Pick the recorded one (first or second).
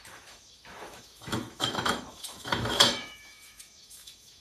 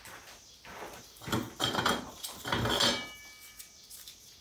second